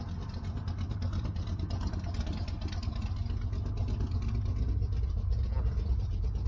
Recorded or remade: recorded